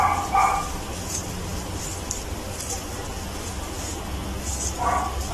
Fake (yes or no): no